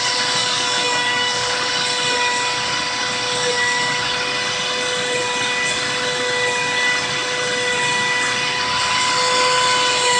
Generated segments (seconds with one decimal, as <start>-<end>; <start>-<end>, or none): 0.4-1.7